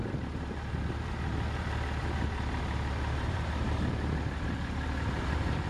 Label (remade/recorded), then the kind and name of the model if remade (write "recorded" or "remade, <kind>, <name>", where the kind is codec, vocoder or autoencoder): remade, vocoder, BigVGAN v2